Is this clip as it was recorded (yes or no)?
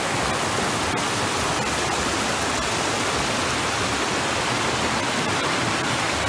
yes